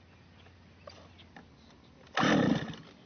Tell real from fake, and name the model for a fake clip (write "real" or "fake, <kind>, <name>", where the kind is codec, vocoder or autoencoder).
real